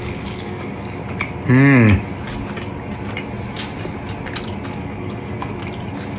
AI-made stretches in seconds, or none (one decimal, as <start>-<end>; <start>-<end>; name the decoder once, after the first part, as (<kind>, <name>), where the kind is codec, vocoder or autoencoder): 0.0-1.0 (codec, DAC); 4.7-5.6